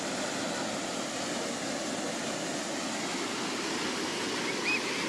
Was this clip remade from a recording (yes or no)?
no